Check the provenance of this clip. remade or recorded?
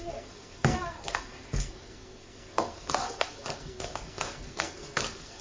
remade